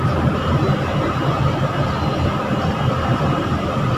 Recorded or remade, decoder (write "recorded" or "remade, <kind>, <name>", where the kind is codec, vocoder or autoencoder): recorded